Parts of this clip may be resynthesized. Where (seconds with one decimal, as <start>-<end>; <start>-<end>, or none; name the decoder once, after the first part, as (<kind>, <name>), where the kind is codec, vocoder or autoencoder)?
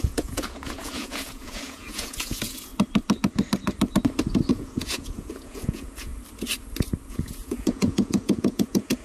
0.0-2.7 (vocoder, Vocos); 4.5-6.1; 7.1-9.0